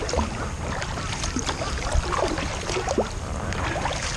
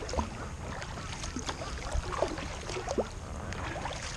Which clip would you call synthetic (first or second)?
first